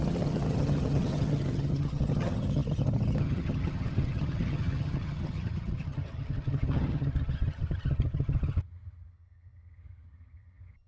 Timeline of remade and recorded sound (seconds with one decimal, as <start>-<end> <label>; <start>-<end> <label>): 0.0-10.9 remade